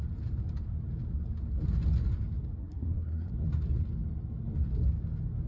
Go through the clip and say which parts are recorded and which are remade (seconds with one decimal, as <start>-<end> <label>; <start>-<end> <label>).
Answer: 0.0-2.6 recorded; 2.6-3.3 remade; 3.3-5.5 recorded

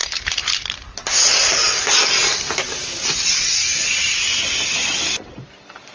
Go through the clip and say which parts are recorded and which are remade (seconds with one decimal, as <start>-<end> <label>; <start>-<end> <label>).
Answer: 0.0-5.9 recorded

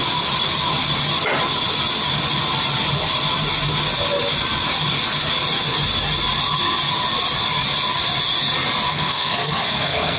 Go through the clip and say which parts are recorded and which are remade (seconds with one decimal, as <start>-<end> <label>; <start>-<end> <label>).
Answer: 0.0-8.9 recorded; 8.9-10.2 remade

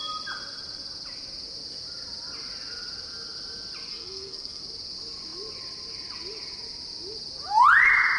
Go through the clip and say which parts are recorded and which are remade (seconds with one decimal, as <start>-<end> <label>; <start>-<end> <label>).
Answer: 0.0-3.9 recorded; 3.9-4.6 remade; 4.6-8.2 recorded

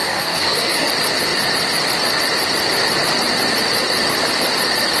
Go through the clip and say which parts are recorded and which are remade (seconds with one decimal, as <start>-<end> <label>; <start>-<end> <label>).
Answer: 0.0-0.9 remade; 0.9-5.0 recorded

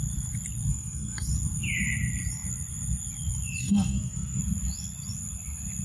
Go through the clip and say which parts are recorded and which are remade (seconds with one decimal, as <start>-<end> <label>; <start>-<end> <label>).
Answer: 0.0-0.7 recorded; 0.7-1.3 remade; 1.3-3.6 recorded; 3.6-4.4 remade; 4.4-5.8 recorded

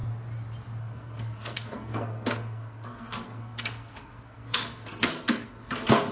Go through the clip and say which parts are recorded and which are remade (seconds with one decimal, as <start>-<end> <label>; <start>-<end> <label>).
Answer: 0.0-0.8 recorded; 0.8-6.1 remade